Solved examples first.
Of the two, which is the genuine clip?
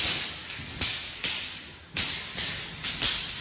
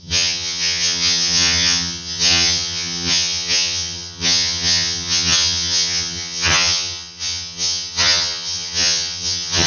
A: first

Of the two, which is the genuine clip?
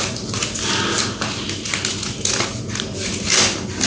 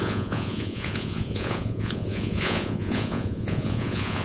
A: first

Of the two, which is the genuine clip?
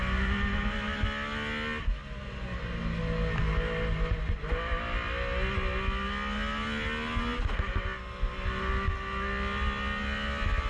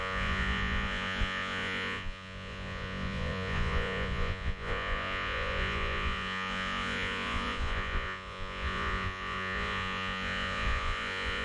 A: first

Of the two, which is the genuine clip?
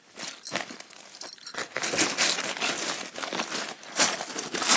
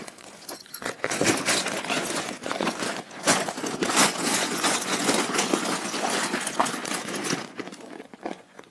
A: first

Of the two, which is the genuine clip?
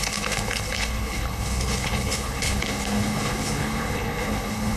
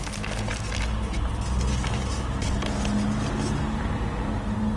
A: second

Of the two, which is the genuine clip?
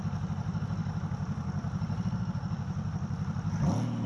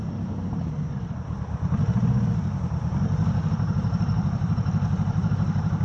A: first